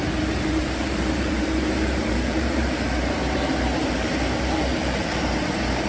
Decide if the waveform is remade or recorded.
remade